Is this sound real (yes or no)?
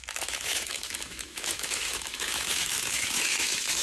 no